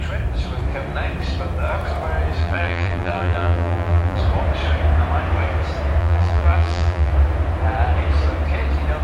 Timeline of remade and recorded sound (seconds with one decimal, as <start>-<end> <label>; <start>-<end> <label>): 0.0-2.4 recorded; 2.4-4.2 remade; 4.2-6.0 recorded; 6.0-7.1 remade; 7.1-9.0 recorded